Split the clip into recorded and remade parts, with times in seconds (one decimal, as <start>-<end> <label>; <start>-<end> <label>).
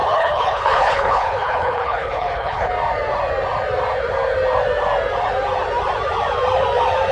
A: 0.0-2.7 remade; 2.7-7.1 recorded